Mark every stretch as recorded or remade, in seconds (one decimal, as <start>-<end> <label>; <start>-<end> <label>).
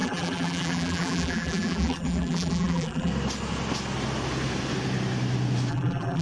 0.0-3.1 remade; 3.1-5.7 recorded; 5.7-6.2 remade